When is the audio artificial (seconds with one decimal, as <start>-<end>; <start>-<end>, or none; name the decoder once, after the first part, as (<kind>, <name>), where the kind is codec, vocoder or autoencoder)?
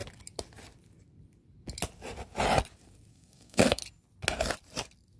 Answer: 3.1-3.8 (codec, SNAC)